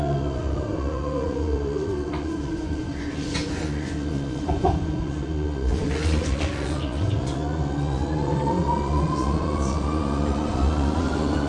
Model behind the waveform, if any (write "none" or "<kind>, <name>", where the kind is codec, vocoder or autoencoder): vocoder, Vocos